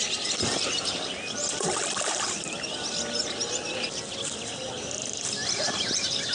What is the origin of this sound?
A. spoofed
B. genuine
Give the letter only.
B